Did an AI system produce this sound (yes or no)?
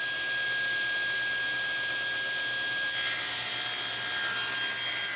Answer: no